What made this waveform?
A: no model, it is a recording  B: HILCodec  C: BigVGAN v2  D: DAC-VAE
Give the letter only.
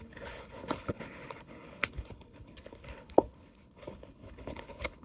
B